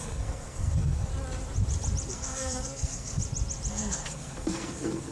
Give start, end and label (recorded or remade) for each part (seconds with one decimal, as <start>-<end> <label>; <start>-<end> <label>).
0.0-1.1 remade; 1.1-2.1 recorded; 2.1-3.2 remade; 3.2-3.7 recorded; 3.7-5.1 remade

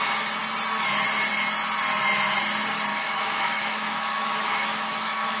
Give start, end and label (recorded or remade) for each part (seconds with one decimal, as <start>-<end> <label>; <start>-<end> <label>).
0.0-2.9 recorded; 2.9-5.4 remade